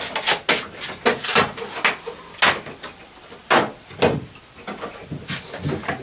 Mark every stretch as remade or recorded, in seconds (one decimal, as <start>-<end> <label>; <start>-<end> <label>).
0.0-6.0 recorded